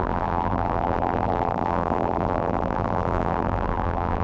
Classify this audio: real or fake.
fake